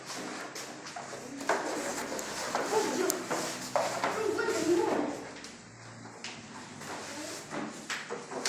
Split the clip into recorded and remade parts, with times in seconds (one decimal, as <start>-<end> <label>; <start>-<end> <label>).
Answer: 0.0-8.5 recorded

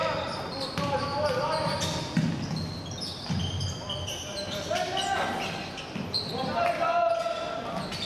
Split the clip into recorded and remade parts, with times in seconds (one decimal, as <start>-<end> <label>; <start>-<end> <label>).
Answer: 0.0-8.1 recorded

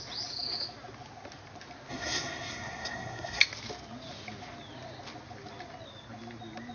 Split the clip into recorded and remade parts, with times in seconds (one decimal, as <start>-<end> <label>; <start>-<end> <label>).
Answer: 0.0-1.9 recorded; 1.9-3.4 remade; 3.4-6.7 recorded

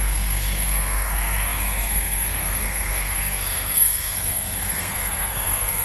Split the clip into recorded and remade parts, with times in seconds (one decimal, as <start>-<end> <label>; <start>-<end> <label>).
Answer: 0.0-5.8 remade

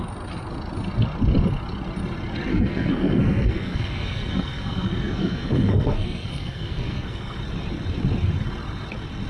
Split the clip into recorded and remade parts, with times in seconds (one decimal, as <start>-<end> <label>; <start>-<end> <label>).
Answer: 0.0-2.5 recorded; 2.5-7.4 remade; 7.4-9.3 recorded

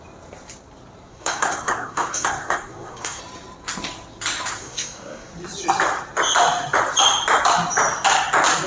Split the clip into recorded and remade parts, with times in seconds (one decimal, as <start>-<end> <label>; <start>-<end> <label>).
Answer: 0.0-1.1 recorded; 1.1-3.2 remade; 3.2-4.6 recorded; 4.6-5.3 remade; 5.3-8.7 recorded

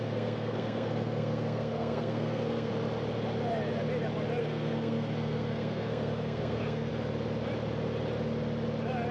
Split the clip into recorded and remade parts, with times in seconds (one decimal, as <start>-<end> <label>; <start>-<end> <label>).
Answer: 0.0-2.7 remade; 2.7-4.4 recorded; 4.4-6.9 remade; 6.9-9.1 recorded